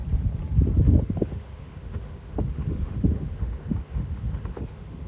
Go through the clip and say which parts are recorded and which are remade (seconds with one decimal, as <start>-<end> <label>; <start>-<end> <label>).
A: 0.0-0.8 recorded; 0.8-5.1 remade

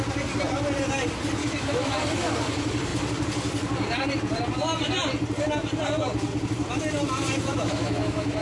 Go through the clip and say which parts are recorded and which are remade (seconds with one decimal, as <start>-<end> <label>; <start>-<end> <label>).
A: 0.0-1.4 recorded; 1.4-2.0 remade; 2.0-7.5 recorded; 7.5-8.4 remade

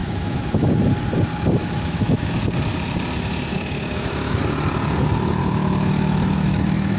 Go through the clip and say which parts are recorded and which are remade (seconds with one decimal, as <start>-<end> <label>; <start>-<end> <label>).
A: 0.0-0.7 remade; 0.7-1.6 recorded; 1.6-2.3 remade; 2.3-3.5 recorded; 3.5-4.4 remade; 4.4-5.4 recorded; 5.4-7.0 remade

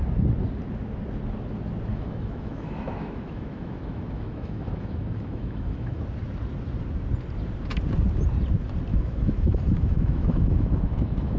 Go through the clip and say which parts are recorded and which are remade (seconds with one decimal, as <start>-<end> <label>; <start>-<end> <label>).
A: 0.0-1.9 recorded; 1.9-6.0 remade; 6.0-8.9 recorded; 8.9-11.4 remade

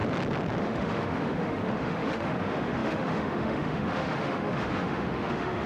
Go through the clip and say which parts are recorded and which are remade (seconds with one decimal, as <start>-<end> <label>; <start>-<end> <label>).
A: 0.0-0.6 recorded; 0.6-5.7 remade

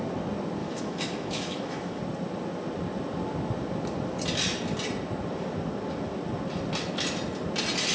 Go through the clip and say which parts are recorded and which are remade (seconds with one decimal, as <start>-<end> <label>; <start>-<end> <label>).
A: 0.0-0.6 recorded; 0.6-2.0 remade; 2.0-7.9 recorded

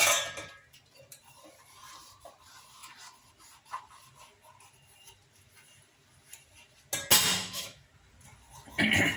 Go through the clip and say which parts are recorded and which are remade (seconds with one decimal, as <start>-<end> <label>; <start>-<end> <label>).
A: 0.0-7.4 recorded; 7.4-7.9 remade; 7.9-9.2 recorded

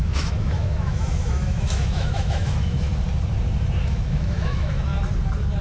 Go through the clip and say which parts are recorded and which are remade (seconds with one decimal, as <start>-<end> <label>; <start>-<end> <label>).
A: 0.0-2.9 remade; 2.9-3.8 recorded; 3.8-4.9 remade; 4.9-5.6 recorded